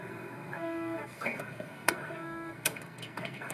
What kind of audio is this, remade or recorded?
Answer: remade